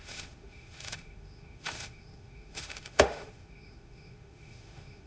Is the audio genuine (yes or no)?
no